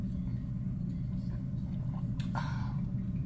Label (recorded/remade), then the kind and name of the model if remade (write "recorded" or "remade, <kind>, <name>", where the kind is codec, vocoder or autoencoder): recorded